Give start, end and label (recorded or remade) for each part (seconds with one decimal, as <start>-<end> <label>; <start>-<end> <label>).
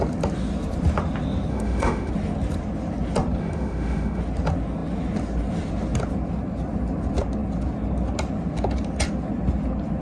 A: 0.0-1.5 recorded; 1.5-2.1 remade; 2.1-3.4 recorded; 3.4-4.2 remade; 4.2-10.0 recorded